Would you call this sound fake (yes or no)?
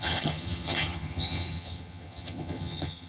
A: yes